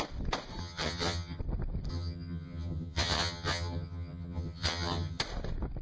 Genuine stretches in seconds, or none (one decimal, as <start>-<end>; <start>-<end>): 0.0-0.6; 1.4-1.9; 5.2-5.8